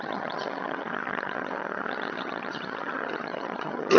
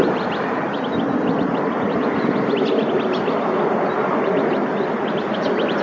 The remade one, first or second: first